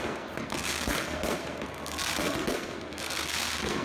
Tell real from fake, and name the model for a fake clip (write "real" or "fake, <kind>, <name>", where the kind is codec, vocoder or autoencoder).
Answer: fake, codec, SNAC